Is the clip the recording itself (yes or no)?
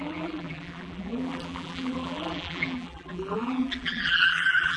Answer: no